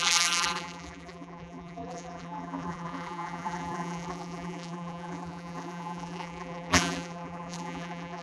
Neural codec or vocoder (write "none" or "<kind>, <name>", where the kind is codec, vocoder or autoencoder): vocoder, BigVGAN v2